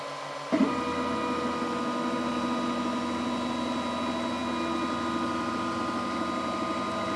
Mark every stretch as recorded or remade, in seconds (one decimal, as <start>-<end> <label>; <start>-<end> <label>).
0.0-7.2 recorded